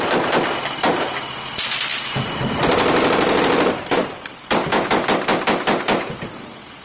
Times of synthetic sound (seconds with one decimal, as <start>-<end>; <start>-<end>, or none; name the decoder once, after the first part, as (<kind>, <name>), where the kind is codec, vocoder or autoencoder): none